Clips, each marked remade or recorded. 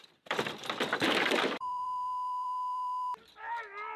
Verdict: remade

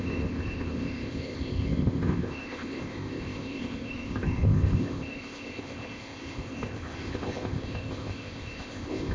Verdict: remade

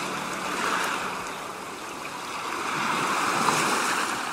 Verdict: recorded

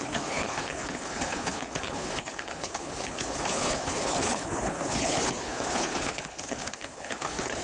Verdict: remade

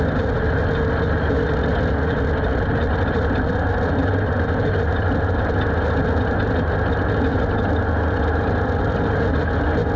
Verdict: recorded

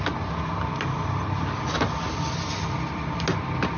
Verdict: recorded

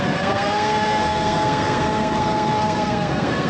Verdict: remade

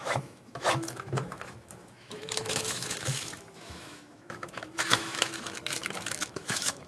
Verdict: remade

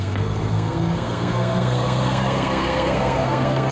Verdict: remade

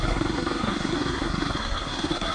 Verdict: remade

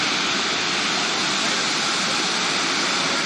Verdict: recorded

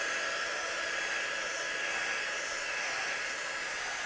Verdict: recorded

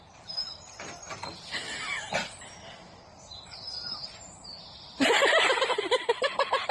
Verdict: remade